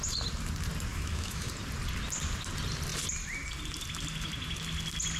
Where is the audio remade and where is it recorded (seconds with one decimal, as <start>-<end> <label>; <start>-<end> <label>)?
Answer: 0.0-0.9 recorded; 0.9-1.5 remade; 1.5-5.2 recorded